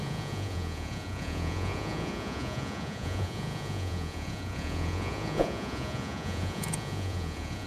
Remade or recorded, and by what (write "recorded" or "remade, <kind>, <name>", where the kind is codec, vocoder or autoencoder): remade, vocoder, Vocos